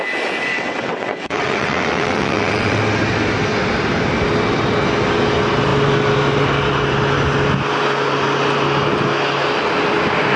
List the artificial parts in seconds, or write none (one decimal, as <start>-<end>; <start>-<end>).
0.5-2.8